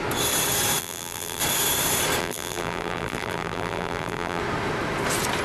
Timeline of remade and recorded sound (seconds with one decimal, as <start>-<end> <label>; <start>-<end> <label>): 0.0-0.8 recorded; 0.8-1.4 remade; 1.4-2.2 recorded; 2.2-4.4 remade; 4.4-5.4 recorded